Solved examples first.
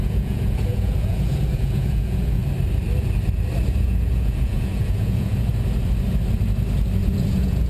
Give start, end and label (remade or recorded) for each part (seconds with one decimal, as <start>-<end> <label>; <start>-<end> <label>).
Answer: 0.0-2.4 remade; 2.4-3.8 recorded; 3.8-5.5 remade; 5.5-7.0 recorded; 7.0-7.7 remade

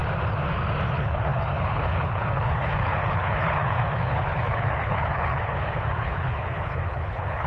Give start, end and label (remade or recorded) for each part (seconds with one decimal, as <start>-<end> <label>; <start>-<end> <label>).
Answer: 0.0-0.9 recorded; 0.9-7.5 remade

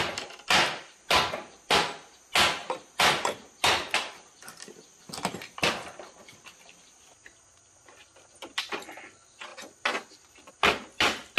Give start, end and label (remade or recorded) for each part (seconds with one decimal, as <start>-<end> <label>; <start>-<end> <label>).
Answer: 0.0-11.4 recorded

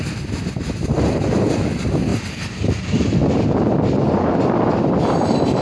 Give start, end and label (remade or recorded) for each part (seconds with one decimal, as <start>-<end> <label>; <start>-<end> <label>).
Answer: 0.0-5.6 recorded

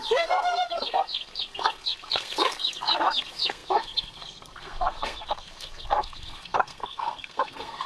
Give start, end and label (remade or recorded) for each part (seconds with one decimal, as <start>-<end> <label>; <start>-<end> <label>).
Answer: 0.0-7.9 remade

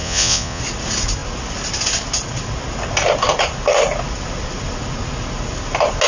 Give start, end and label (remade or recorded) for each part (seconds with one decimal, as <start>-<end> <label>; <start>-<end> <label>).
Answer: 0.0-0.6 remade; 0.6-6.1 recorded

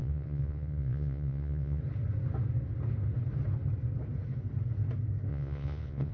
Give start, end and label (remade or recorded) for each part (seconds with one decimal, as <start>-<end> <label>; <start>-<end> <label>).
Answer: 0.0-1.8 remade; 1.8-5.3 recorded; 5.3-6.1 remade

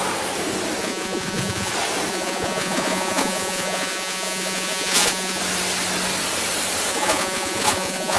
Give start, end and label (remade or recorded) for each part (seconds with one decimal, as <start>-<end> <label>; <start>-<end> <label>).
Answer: 0.0-0.8 recorded; 0.8-1.7 remade; 1.7-2.1 recorded; 2.1-5.4 remade; 5.4-6.9 recorded; 6.9-8.2 remade